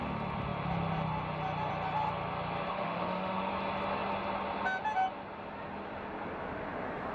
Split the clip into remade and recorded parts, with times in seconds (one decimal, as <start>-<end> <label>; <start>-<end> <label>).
0.0-2.7 recorded; 2.7-3.5 remade; 3.5-7.1 recorded